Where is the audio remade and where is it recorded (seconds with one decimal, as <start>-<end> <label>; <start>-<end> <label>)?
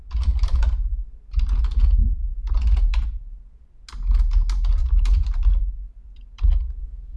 0.0-0.9 recorded; 0.9-1.5 remade; 1.5-2.0 recorded; 2.0-3.4 remade; 3.4-4.8 recorded; 4.8-6.5 remade; 6.5-7.2 recorded